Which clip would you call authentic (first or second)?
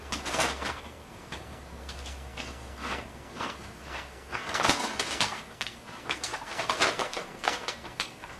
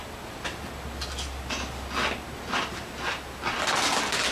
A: second